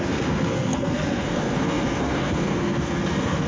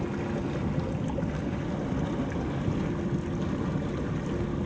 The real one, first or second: second